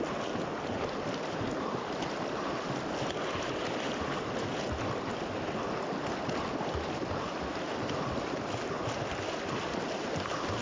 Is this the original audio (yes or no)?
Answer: yes